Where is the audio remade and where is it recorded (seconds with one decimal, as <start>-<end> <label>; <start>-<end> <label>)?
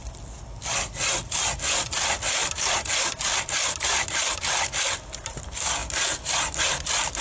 0.0-2.4 recorded; 2.4-3.4 remade; 3.4-7.2 recorded